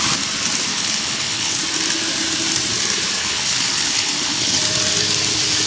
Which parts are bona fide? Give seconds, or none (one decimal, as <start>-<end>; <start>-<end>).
0.0-0.7; 1.6-3.2; 4.6-5.7